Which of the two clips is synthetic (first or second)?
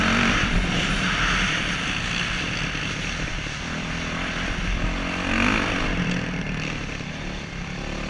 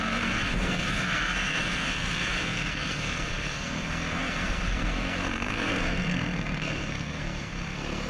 second